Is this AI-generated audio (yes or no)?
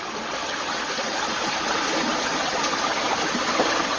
no